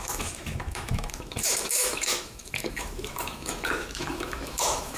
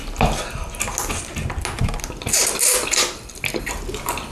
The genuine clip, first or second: second